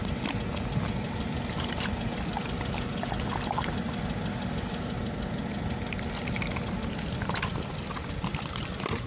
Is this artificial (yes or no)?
no